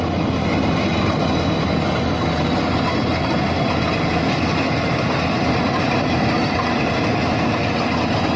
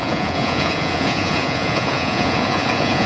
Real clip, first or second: first